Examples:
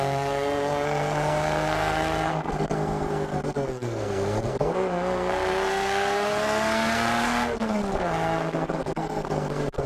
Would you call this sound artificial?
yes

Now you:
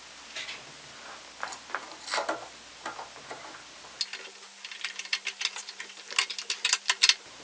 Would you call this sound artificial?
no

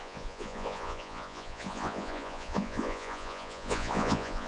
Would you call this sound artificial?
yes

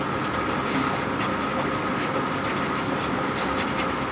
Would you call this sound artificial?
no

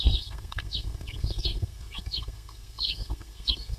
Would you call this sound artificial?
yes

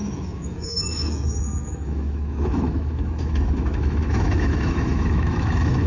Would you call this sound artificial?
yes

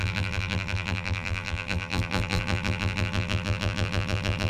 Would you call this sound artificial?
yes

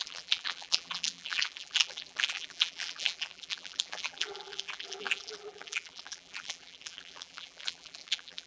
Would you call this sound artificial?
yes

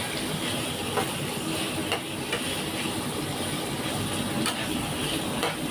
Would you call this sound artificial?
no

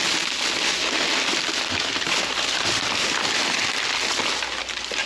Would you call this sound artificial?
no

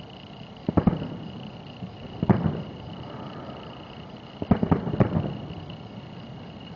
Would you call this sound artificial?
no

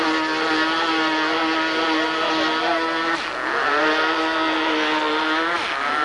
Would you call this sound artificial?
no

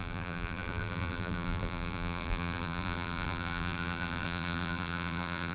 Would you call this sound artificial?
yes